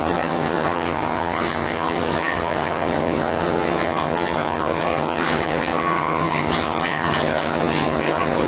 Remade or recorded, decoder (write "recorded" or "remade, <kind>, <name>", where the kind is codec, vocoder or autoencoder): remade, vocoder, HiFi-GAN